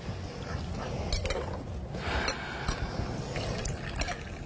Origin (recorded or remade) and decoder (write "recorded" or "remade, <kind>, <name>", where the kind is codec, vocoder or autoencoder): recorded